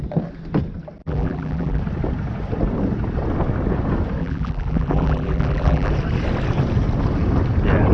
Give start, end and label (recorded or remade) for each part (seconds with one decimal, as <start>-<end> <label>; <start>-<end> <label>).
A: 0.0-1.0 recorded; 1.0-1.8 remade; 1.8-4.2 recorded; 4.2-5.9 remade; 5.9-7.9 recorded